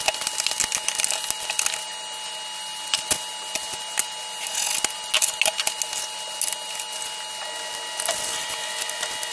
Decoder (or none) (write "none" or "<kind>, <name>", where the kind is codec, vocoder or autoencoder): none